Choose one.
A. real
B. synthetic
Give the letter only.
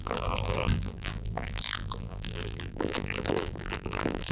B